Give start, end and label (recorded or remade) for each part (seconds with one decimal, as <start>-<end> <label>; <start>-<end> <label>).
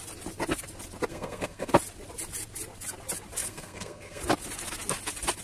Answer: 0.0-1.1 recorded; 1.1-1.7 remade; 1.7-3.4 recorded; 3.4-4.2 remade; 4.2-5.4 recorded